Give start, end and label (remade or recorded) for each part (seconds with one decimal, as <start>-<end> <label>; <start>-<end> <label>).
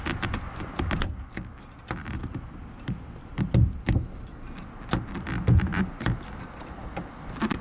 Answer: 0.0-7.6 recorded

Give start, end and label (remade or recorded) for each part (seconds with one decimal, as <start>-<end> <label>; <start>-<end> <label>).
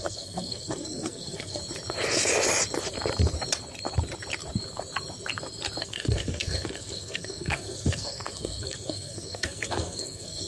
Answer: 0.0-1.6 remade; 1.6-5.8 recorded; 5.8-10.5 remade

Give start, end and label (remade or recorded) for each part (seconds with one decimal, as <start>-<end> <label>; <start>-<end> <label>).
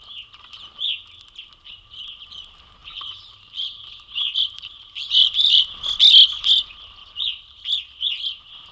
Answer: 0.0-2.8 recorded; 2.8-5.7 remade; 5.7-7.0 recorded; 7.0-7.6 remade; 7.6-8.7 recorded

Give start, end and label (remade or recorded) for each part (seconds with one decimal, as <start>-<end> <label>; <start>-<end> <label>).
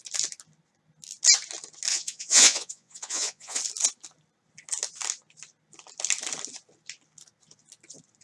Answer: 0.0-1.9 recorded; 1.9-3.6 remade; 3.6-8.2 recorded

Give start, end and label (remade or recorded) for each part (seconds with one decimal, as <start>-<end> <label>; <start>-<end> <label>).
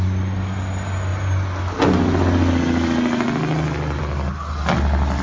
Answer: 0.0-5.2 recorded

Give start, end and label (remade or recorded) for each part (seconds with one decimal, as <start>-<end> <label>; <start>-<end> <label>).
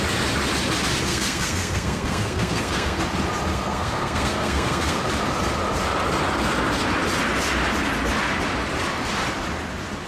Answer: 0.0-1.1 recorded; 1.1-3.0 remade; 3.0-3.5 recorded; 3.5-5.0 remade; 5.0-10.1 recorded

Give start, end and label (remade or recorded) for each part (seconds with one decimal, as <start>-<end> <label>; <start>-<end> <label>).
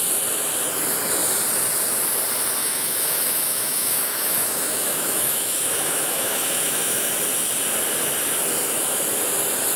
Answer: 0.0-2.6 recorded; 2.6-7.1 remade; 7.1-9.8 recorded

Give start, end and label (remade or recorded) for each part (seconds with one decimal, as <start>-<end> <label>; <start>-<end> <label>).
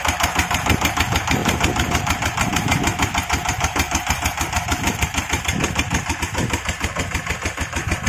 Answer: 0.0-8.1 remade